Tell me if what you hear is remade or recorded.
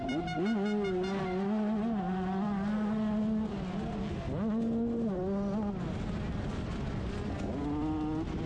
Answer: recorded